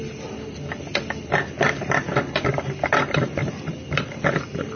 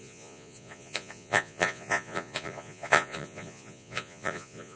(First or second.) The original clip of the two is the first